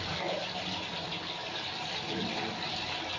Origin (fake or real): real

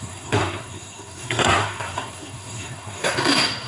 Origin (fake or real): fake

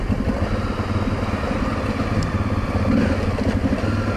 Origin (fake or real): real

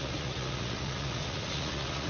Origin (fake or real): fake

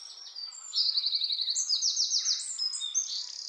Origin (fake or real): real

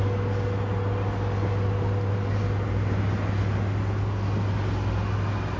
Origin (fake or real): real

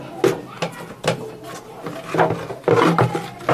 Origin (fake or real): real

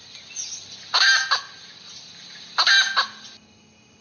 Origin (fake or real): real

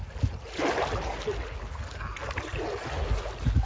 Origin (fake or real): real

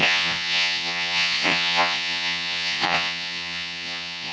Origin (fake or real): fake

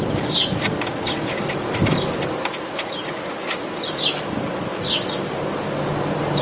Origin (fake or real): real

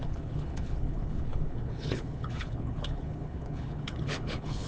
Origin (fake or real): fake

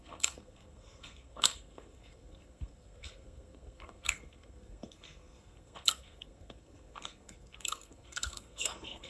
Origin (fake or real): fake